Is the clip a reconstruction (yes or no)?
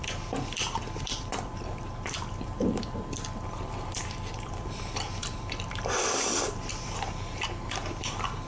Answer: yes